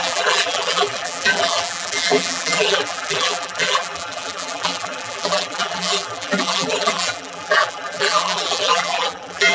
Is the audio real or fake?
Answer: fake